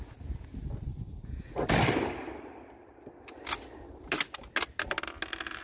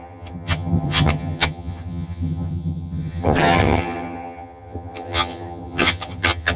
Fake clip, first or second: second